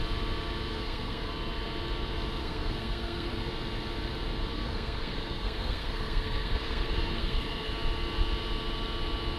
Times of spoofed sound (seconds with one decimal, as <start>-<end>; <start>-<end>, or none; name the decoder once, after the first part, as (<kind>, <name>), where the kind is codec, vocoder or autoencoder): 0.7-1.3 (codec, SNAC); 2.4-3.5; 4.5-7.7